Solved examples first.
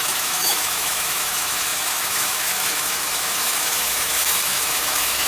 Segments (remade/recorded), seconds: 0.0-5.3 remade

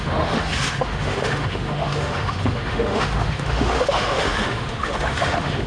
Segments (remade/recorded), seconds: 0.0-5.7 remade

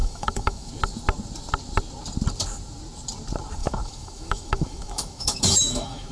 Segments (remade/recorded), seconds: 0.0-0.7 remade; 0.7-3.6 recorded; 3.6-6.1 remade

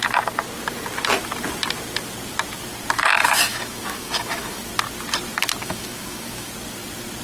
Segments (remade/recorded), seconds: 0.0-3.5 recorded; 3.5-4.7 remade; 4.7-5.6 recorded; 5.6-6.5 remade; 6.5-7.2 recorded

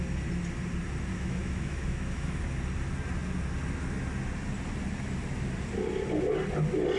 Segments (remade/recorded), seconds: 0.0-1.1 recorded; 1.1-2.4 remade; 2.4-7.0 recorded

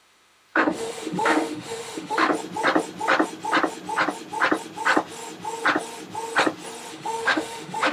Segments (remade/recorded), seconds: 0.0-2.3 remade; 2.3-6.9 recorded; 6.9-7.9 remade

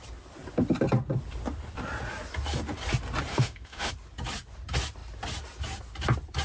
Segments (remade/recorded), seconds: 0.0-3.3 recorded; 3.3-3.9 remade; 3.9-6.4 recorded